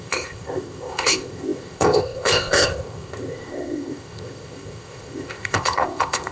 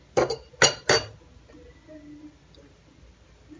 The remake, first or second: first